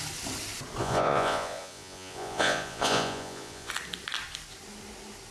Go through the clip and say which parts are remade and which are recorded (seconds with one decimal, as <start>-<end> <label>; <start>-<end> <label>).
0.0-0.8 recorded; 0.8-3.7 remade; 3.7-5.3 recorded